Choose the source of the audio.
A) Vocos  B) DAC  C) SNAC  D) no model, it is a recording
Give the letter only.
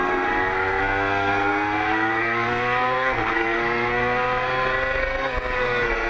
C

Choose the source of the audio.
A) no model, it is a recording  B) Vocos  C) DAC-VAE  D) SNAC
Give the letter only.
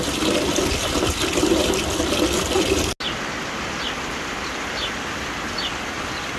A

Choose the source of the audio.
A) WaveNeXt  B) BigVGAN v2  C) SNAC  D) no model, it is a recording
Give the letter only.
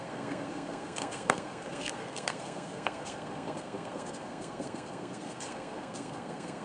C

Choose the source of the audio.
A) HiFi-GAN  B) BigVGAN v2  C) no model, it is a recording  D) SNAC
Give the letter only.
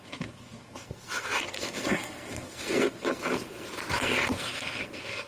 D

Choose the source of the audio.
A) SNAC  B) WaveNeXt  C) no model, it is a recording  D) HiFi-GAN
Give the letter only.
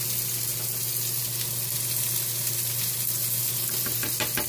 C